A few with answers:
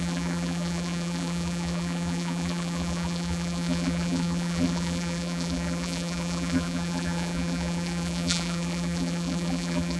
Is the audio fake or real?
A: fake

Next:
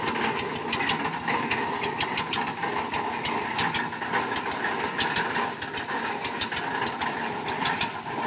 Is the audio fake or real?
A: real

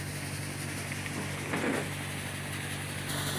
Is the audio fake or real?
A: real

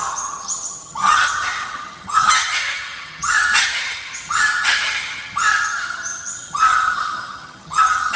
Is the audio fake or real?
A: fake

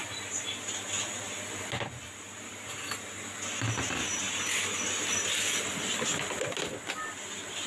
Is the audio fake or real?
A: real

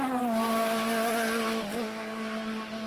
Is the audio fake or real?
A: real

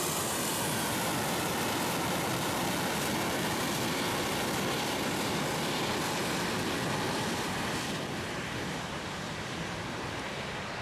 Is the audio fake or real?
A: real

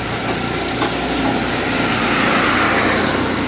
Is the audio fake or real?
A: real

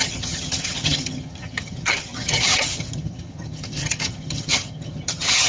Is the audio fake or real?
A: fake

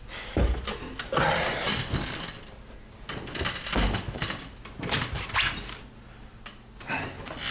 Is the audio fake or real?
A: real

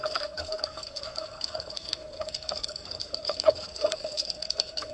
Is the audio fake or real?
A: fake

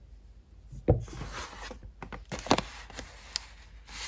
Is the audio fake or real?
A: real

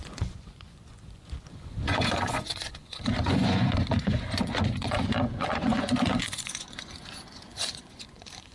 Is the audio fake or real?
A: fake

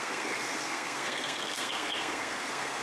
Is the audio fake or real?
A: fake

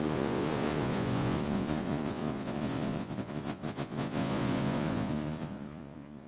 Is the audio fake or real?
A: fake